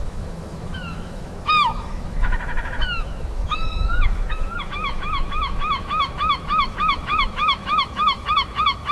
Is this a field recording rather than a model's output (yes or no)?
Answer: no